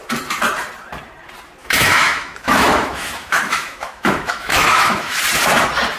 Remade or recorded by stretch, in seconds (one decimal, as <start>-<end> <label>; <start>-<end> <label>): 0.0-1.6 recorded; 1.6-5.2 remade; 5.2-6.0 recorded